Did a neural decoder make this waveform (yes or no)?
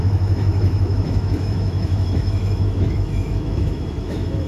yes